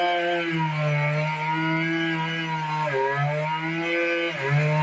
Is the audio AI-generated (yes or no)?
no